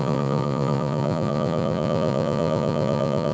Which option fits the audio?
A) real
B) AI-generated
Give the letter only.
B